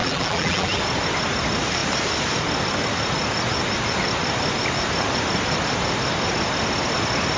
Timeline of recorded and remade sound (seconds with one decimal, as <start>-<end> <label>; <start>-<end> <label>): 0.0-0.8 remade; 0.8-7.4 recorded